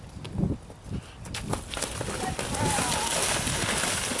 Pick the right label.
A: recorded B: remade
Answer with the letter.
A